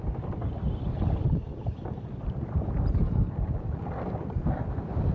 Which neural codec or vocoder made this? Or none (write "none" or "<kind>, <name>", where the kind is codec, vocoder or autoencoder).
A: none